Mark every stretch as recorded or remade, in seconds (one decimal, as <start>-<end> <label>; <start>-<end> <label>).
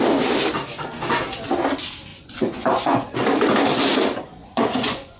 0.0-2.1 recorded; 2.1-3.1 remade; 3.1-4.4 recorded; 4.4-5.2 remade